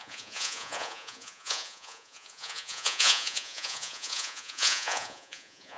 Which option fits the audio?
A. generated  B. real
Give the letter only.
A